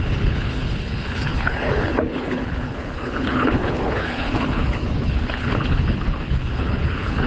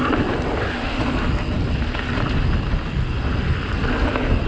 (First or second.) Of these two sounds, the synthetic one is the first